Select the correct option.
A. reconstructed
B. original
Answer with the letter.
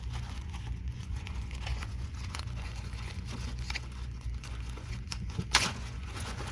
A